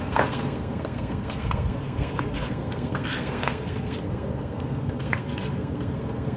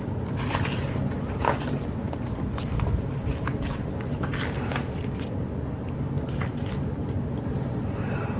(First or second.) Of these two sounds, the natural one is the second